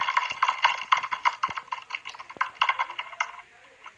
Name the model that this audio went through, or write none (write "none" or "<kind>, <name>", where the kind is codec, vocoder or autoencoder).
none